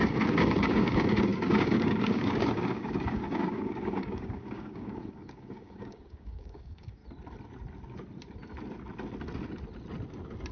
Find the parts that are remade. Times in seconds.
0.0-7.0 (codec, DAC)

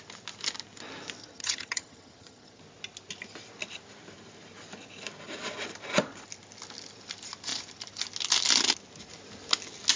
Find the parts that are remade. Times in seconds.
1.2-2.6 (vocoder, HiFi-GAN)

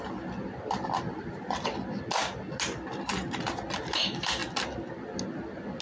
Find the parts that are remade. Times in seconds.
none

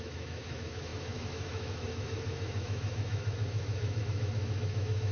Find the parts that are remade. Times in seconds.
0.0-5.1 (autoencoder, DAC-VAE)